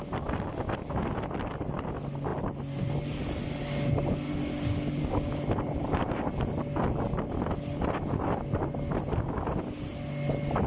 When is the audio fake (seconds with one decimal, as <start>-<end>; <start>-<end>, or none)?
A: none